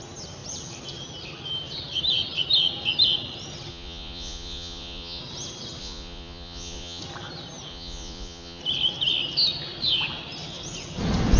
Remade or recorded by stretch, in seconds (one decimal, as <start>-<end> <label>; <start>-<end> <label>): 0.0-3.7 recorded; 3.7-5.2 remade; 5.2-5.8 recorded; 5.8-7.0 remade; 7.0-7.7 recorded; 7.7-8.6 remade; 8.6-11.4 recorded